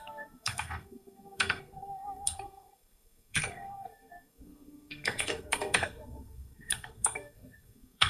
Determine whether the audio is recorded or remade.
remade